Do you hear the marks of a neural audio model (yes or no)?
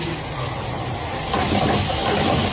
no